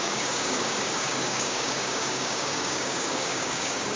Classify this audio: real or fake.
fake